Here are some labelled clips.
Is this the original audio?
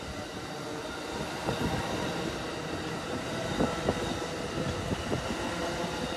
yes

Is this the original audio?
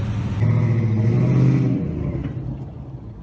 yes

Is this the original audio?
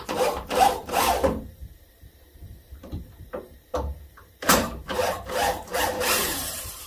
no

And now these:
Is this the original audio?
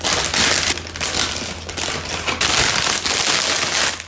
yes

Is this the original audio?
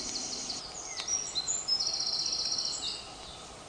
yes